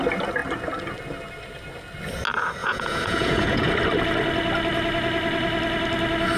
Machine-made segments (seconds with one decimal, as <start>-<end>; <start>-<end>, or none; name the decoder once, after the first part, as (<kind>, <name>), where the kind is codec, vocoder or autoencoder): 2.6-3.7 (vocoder, Vocos)